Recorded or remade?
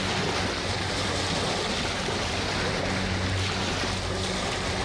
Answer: recorded